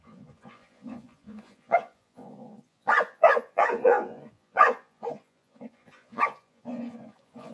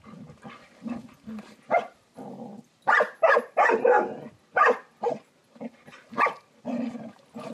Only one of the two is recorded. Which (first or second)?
second